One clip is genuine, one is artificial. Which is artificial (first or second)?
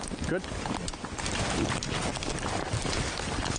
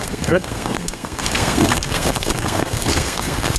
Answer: second